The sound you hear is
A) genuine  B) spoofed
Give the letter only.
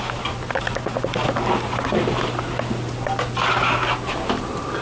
A